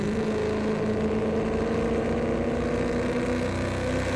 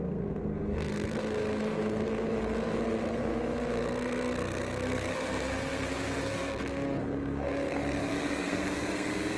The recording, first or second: first